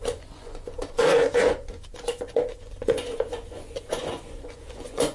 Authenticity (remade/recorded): remade